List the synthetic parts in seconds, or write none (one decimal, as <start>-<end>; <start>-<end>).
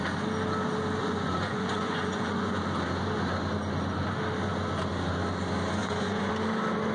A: 1.0-2.6; 5.8-6.3